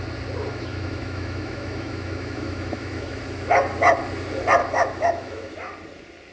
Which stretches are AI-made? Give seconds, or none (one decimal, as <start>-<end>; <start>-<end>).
0.5-3.2; 4.6-5.5